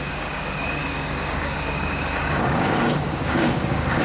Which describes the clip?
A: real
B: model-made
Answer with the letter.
B